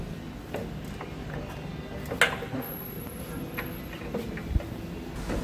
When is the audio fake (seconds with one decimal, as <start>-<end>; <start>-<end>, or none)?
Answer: none